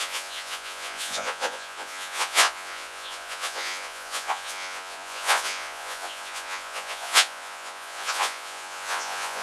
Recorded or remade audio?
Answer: remade